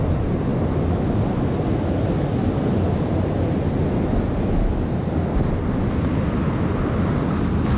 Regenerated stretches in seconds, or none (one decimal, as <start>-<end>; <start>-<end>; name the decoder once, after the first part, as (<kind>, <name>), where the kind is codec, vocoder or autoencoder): none